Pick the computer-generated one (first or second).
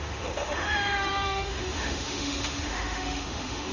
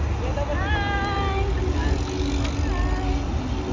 first